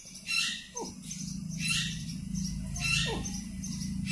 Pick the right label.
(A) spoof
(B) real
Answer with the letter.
B